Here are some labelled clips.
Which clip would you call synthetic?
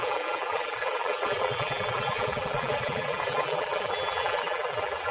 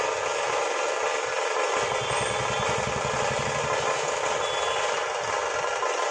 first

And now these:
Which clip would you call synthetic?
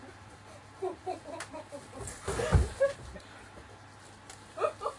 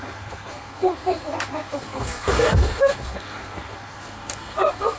second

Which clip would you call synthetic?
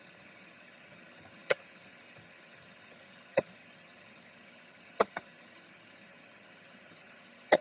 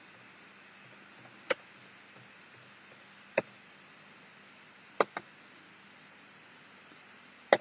first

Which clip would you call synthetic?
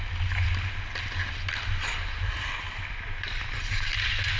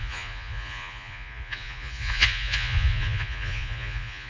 second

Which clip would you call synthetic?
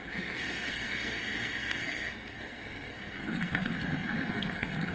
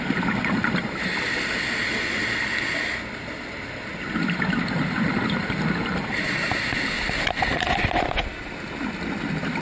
first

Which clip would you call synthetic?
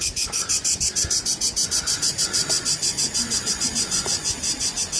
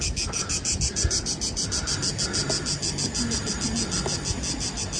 first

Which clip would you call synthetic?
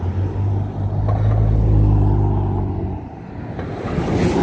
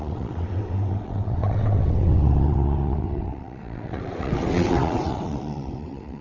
second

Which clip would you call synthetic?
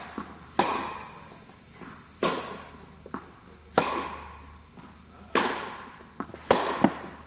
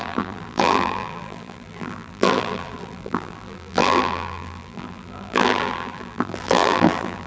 second